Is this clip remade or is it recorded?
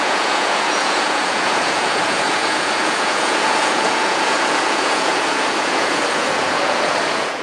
remade